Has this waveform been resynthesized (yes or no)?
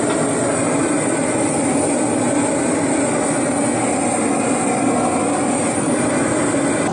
no